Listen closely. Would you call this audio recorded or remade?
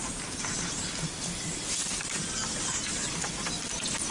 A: recorded